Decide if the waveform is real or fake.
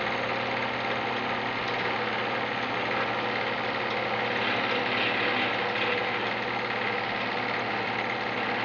real